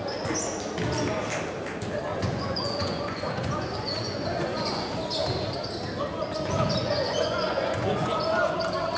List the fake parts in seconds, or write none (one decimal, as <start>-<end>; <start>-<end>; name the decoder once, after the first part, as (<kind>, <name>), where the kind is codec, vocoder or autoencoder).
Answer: 2.1-4.9 (vocoder, Vocos); 6.8-8.6